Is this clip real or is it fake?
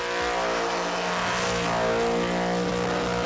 real